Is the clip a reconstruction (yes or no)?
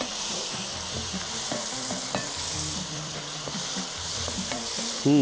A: yes